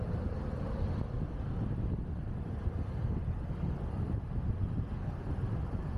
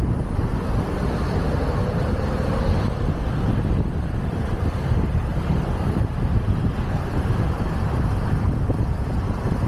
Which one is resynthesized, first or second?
second